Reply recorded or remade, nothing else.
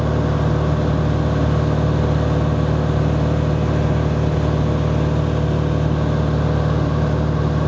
recorded